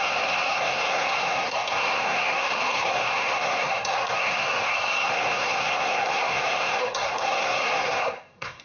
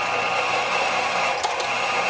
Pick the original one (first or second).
second